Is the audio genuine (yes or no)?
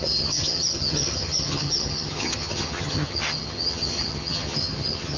no